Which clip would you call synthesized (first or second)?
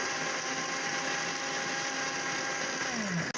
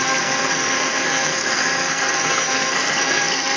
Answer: second